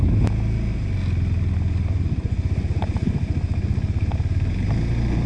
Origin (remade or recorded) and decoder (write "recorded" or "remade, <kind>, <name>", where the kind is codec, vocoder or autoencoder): recorded